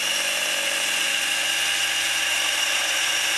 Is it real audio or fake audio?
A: real